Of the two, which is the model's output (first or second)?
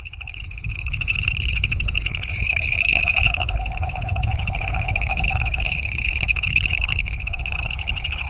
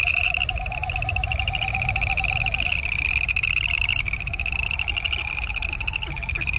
first